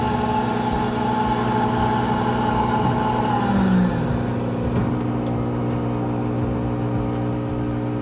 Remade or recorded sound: recorded